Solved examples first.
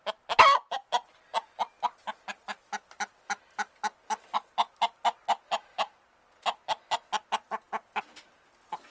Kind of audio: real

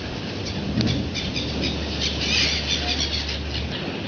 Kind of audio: real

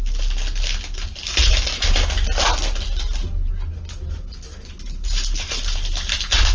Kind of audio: real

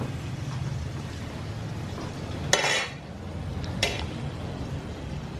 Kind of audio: real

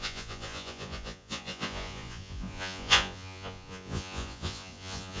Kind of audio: fake